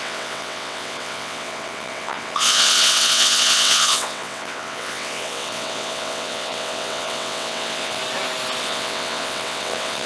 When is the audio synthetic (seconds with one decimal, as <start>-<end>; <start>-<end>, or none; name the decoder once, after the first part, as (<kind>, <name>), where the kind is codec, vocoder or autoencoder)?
0.0-8.0 (vocoder, WaveNeXt); 8.6-10.1